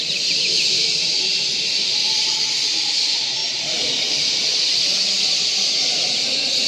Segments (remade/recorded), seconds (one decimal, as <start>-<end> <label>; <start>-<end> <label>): 0.0-4.5 recorded; 4.5-5.7 remade; 5.7-6.7 recorded